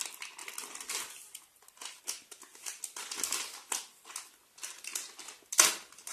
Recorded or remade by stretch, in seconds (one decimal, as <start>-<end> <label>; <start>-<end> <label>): 0.0-6.1 recorded